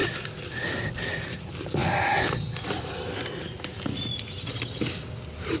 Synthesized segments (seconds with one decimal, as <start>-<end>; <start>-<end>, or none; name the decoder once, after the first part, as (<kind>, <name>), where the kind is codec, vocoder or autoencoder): none